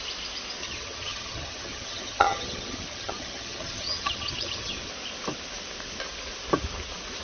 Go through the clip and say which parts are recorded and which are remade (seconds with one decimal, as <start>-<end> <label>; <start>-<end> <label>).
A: 0.0-0.6 recorded; 0.6-4.9 remade; 4.9-7.2 recorded